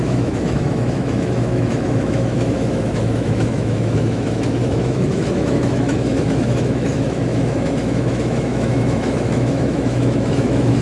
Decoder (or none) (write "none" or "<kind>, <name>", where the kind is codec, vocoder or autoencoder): autoencoder, DAC-VAE